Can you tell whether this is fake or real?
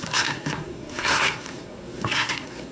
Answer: fake